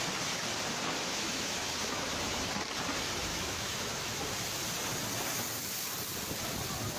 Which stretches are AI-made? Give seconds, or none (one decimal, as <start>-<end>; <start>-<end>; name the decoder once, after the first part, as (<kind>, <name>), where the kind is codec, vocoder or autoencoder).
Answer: 1.1-2.4 (autoencoder, DAC-VAE); 3.3-4.2